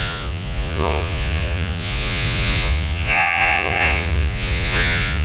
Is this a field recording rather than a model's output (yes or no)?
no